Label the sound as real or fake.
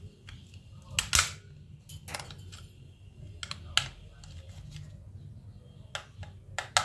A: real